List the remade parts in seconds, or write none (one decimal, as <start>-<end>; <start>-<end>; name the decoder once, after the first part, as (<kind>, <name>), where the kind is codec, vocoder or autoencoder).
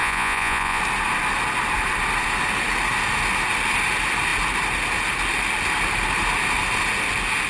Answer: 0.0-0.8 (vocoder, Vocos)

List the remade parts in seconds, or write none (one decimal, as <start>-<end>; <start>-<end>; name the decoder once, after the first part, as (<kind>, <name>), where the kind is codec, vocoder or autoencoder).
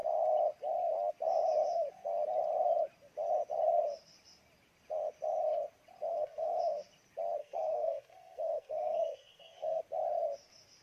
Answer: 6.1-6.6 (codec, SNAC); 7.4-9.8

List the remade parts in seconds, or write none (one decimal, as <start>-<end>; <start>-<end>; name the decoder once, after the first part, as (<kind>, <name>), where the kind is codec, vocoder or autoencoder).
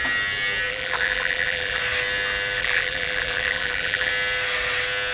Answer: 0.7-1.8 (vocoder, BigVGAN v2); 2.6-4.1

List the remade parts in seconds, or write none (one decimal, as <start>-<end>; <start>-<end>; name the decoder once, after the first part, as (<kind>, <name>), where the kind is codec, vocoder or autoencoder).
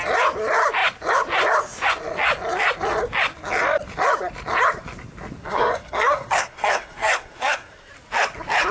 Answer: 5.4-7.9 (codec, SNAC)